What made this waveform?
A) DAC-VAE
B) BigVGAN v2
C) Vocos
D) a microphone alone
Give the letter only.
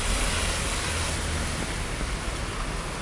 D